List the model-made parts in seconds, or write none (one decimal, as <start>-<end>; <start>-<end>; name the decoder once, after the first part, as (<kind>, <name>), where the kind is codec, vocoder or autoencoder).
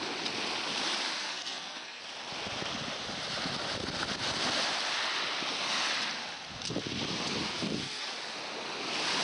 1.2-2.0 (codec, SNAC); 7.5-8.1